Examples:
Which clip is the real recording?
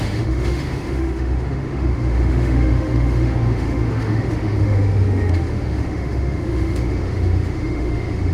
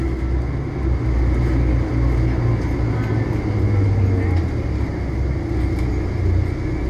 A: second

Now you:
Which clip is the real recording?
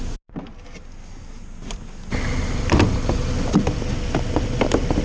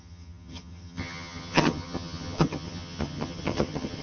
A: first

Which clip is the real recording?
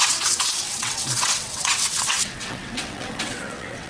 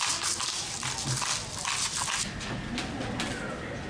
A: second